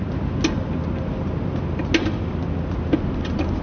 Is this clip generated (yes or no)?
no